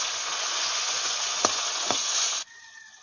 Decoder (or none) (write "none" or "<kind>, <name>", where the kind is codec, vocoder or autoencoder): vocoder, Vocos